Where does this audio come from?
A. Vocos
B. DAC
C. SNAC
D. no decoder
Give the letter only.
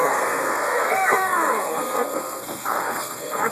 C